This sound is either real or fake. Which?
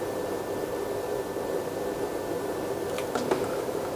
real